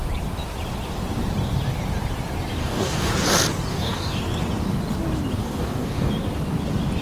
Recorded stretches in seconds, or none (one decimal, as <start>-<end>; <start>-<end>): 0.0-2.6; 3.1-3.7; 4.2-5.4; 6.1-7.0

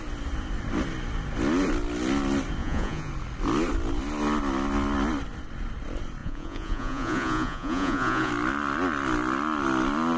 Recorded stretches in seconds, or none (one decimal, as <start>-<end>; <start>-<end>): 0.0-2.6; 3.1-6.2; 8.3-10.2

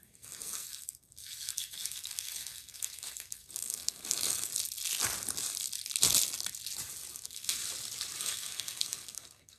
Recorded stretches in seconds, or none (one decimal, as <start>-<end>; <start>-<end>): 4.5-7.1; 7.6-8.2

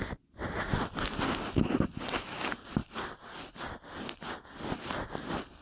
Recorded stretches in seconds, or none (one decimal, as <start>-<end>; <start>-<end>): 0.0-5.6

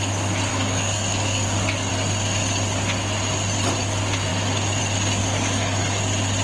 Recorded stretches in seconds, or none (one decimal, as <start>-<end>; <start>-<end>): 0.0-0.5; 1.9-5.2; 6.0-6.4